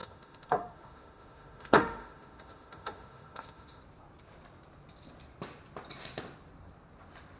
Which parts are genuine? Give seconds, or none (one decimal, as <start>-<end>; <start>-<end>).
3.8-7.4